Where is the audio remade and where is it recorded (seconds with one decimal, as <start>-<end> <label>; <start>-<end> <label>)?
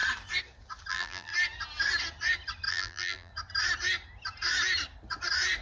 0.0-0.9 recorded; 0.9-1.3 remade; 1.3-2.7 recorded; 2.7-3.3 remade; 3.3-5.6 recorded